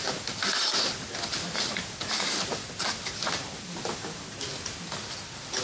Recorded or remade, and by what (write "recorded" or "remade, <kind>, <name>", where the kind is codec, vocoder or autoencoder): recorded